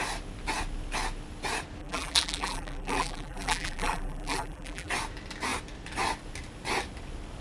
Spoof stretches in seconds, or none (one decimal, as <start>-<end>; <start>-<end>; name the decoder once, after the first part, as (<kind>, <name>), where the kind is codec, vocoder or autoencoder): 1.8-4.9 (vocoder, BigVGAN v2)